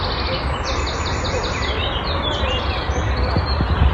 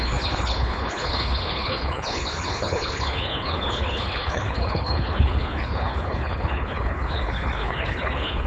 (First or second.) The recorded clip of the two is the first